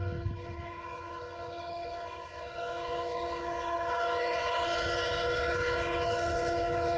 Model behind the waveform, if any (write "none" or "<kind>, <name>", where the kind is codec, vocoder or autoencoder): codec, HILCodec